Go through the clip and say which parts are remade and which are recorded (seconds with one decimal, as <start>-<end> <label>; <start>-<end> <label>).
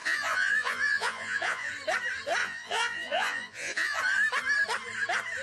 0.0-1.7 remade; 1.7-2.4 recorded; 2.4-4.0 remade; 4.0-5.4 recorded